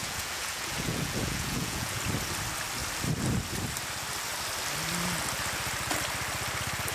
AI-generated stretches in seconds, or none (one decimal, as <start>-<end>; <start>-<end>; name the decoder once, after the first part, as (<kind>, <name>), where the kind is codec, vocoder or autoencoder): 0.0-2.0 (vocoder, Vocos)